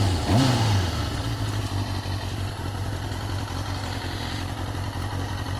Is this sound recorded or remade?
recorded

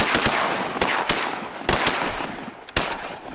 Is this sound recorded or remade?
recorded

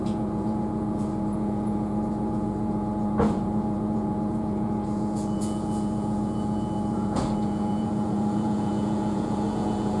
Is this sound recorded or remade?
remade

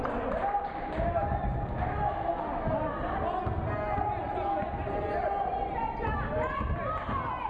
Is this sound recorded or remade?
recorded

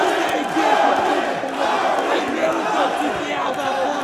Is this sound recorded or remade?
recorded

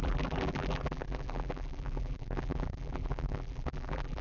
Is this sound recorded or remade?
remade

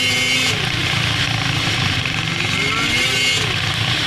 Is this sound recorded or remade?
recorded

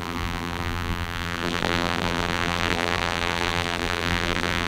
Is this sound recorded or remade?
remade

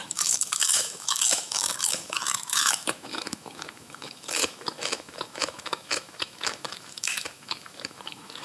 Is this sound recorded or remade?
remade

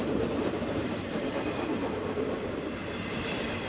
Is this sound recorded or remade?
remade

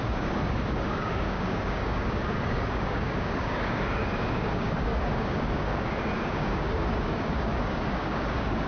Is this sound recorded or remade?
remade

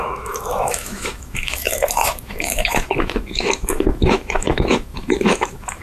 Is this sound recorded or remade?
remade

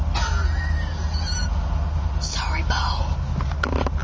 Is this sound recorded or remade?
recorded